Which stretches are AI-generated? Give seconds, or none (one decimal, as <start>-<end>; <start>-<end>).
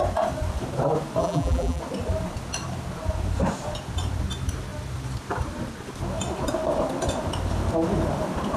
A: 1.2-1.8